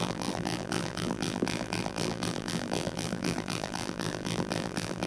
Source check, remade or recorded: remade